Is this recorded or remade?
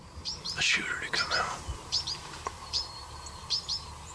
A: remade